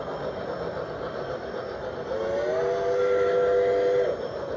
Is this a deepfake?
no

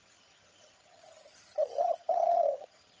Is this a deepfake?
yes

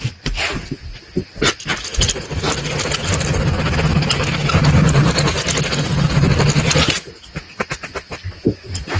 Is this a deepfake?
no